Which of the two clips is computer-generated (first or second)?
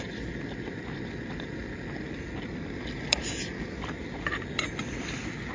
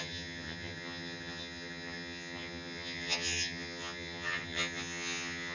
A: second